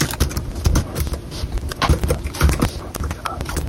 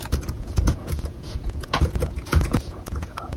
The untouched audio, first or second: first